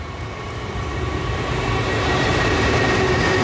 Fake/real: real